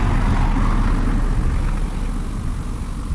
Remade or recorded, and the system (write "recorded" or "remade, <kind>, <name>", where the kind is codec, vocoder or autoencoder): recorded